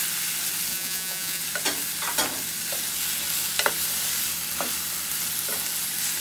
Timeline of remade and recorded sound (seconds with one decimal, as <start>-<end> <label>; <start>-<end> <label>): 0.0-0.7 recorded; 0.7-1.4 remade; 1.4-6.2 recorded